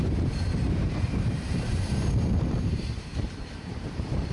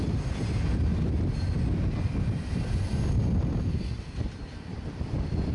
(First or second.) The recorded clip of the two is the second